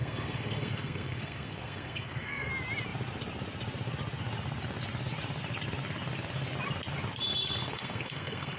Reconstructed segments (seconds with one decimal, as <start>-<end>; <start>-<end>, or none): 0.0-2.5; 7.6-8.6

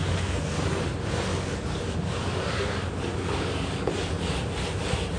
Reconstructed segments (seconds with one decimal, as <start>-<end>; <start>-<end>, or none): 0.0-0.8; 1.3-4.4

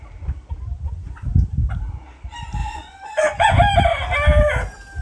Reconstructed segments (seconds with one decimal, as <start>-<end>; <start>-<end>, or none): 2.6-3.6